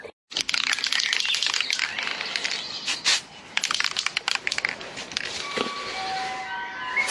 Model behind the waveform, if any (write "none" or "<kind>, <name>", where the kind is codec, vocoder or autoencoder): none